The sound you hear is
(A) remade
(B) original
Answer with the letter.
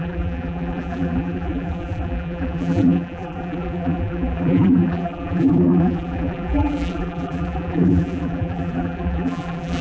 A